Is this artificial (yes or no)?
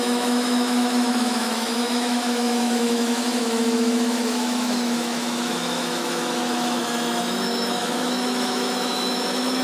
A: yes